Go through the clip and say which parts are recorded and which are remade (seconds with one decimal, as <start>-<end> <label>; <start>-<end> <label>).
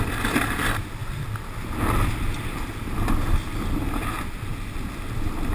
0.0-5.5 recorded